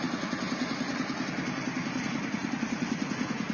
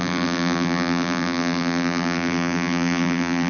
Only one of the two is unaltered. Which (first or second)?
first